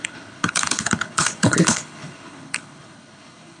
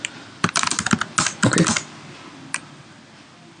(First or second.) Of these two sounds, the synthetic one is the first